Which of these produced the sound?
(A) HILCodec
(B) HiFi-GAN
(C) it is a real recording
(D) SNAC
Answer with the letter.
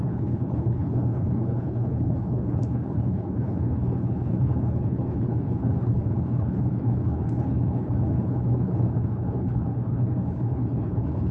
A